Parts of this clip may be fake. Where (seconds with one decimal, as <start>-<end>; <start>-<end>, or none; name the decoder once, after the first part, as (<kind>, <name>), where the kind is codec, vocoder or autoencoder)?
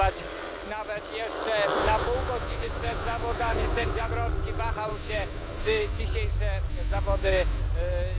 1.8-4.1 (autoencoder, DAC-VAE); 4.9-6.0; 6.7-7.6